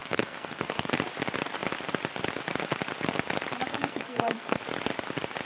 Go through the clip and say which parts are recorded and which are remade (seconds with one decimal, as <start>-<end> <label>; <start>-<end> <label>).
0.0-0.9 remade; 0.9-3.7 recorded; 3.7-4.6 remade; 4.6-5.4 recorded